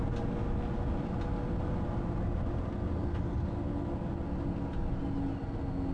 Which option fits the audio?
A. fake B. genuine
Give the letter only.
B